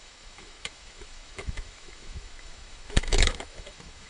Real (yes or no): no